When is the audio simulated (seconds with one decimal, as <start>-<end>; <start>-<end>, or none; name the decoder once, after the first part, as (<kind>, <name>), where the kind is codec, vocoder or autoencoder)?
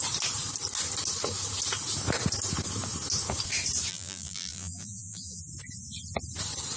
3.9-5.4 (vocoder, BigVGAN v2)